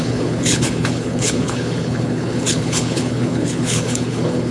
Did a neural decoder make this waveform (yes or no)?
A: yes